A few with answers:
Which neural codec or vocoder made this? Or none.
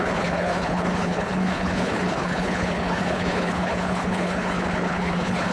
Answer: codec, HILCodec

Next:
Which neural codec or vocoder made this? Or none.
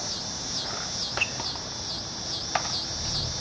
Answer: none